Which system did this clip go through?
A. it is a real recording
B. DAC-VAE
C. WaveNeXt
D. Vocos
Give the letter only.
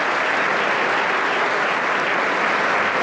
A